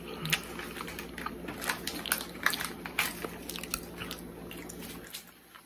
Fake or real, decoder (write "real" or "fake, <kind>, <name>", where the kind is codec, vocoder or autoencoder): real